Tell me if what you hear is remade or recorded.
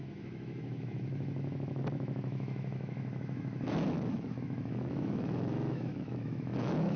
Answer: remade